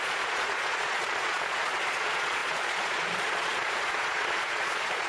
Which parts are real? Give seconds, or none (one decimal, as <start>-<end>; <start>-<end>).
none